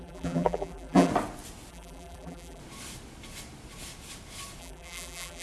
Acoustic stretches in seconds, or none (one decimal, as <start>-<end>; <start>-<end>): 1.1-1.7; 2.6-4.6